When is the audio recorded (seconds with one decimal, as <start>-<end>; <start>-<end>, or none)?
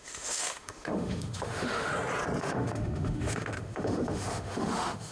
1.9-2.4